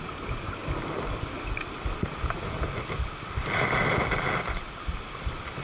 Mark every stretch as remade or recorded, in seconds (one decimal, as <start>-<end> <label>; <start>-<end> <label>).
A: 0.0-5.6 recorded